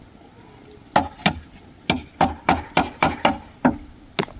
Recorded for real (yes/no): yes